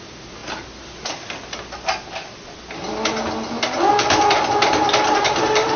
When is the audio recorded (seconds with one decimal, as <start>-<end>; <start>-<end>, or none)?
0.4-3.9